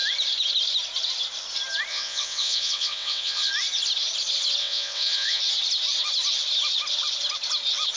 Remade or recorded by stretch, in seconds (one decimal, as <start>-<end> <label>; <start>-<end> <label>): 0.0-1.9 recorded; 1.9-3.5 remade; 3.5-4.6 recorded; 4.6-5.4 remade; 5.4-8.0 recorded